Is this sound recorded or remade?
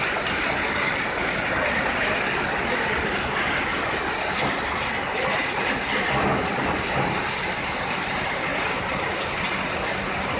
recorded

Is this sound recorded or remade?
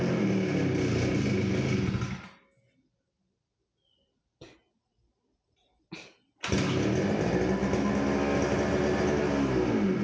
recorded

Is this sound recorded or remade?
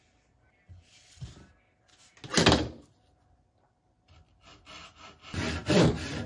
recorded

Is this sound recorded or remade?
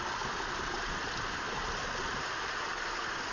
recorded